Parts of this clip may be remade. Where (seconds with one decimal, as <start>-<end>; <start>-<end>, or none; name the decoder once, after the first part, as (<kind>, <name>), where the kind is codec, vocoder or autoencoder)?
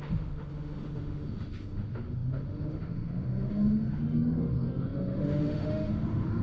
0.0-6.4 (autoencoder, DAC-VAE)